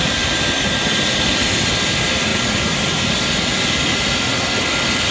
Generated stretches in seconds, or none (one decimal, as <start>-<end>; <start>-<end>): none